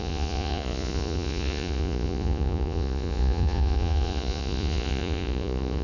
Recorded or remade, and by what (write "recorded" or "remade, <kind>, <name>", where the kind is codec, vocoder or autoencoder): remade, vocoder, Vocos